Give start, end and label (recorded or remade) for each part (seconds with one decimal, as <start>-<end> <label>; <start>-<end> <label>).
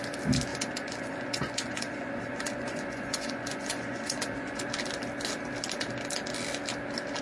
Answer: 0.0-0.5 recorded; 0.5-4.6 remade; 4.6-7.2 recorded